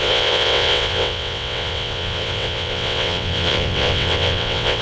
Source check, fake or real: fake